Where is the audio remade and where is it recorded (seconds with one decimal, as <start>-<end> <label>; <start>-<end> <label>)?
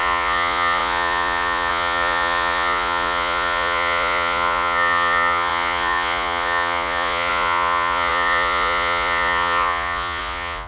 0.0-10.7 remade